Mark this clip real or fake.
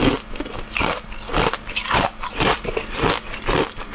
real